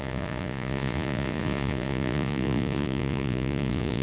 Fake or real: fake